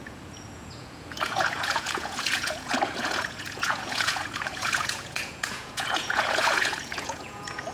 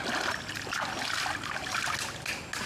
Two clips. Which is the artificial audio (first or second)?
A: first